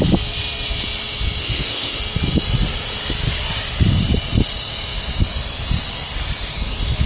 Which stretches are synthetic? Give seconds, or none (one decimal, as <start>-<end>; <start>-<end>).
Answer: 1.4-2.0

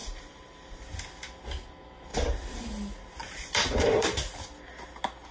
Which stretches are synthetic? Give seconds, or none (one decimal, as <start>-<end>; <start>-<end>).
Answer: 0.0-0.8; 2.1-2.6; 3.2-4.2